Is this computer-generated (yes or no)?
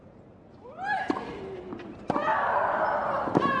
no